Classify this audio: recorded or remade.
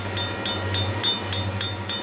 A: recorded